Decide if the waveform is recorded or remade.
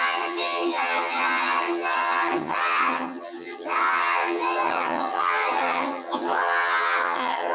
remade